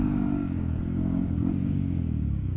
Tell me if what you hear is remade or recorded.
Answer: remade